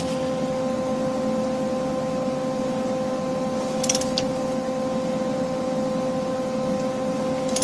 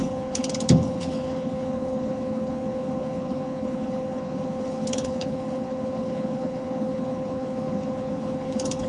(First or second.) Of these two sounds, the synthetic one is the second